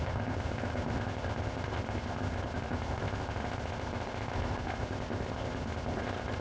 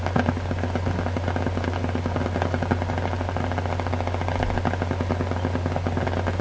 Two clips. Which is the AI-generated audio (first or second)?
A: first